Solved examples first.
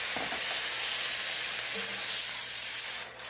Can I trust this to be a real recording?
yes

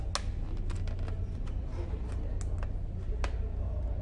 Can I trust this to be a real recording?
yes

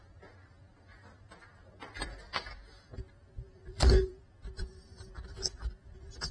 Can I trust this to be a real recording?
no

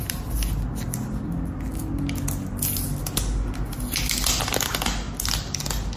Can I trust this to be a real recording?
yes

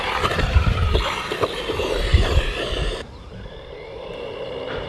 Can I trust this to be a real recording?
no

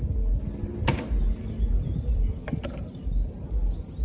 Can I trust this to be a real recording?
yes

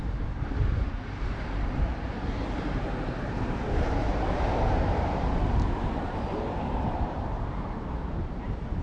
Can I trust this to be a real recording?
no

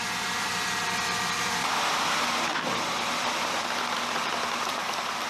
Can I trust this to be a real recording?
no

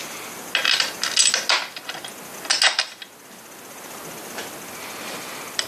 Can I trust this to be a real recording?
yes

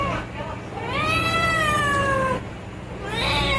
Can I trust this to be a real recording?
no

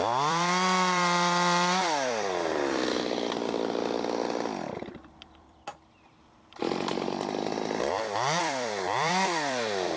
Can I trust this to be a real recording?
no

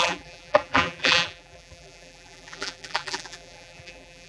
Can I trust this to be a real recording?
no